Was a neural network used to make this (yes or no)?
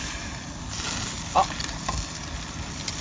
no